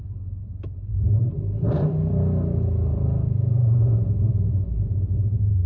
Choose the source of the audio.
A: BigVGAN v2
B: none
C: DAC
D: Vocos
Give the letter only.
A